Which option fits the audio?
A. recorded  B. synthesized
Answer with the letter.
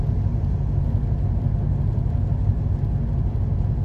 A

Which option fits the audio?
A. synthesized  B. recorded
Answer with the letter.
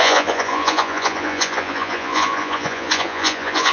A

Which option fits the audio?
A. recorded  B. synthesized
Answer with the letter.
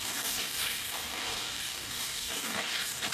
B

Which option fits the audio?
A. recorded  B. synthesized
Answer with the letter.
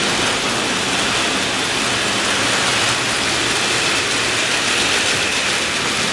A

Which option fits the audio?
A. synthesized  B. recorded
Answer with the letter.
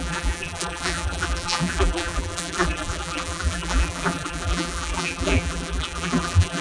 A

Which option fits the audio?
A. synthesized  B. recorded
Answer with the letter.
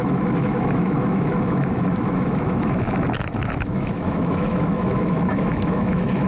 A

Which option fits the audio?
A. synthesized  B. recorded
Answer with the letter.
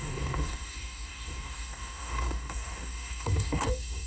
A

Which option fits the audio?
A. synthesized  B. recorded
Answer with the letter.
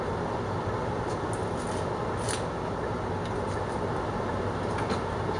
B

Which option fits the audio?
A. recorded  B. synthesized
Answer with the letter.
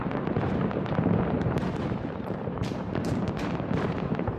B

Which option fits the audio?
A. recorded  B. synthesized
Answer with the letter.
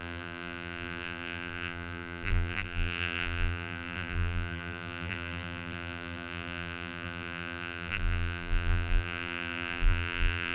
B